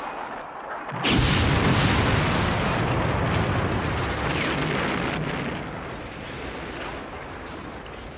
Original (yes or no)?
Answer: yes